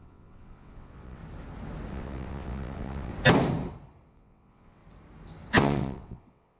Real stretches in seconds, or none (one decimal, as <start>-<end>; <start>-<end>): 1.2-1.9; 3.1-4.1; 4.8-5.5